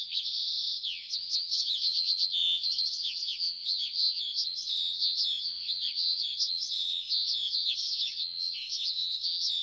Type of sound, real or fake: fake